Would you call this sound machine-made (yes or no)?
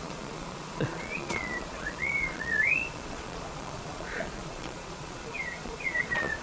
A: yes